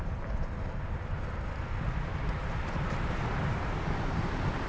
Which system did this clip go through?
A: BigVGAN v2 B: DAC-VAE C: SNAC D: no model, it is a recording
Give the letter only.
A